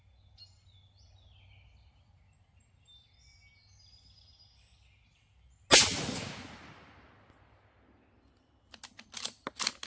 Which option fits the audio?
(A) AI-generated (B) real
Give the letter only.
B